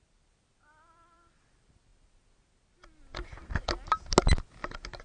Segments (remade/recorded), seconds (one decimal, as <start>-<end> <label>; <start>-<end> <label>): 0.0-1.9 remade; 1.9-5.0 recorded